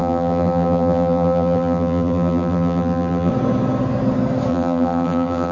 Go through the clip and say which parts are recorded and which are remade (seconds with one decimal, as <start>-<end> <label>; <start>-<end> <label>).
0.0-3.3 remade; 3.3-4.5 recorded; 4.5-5.5 remade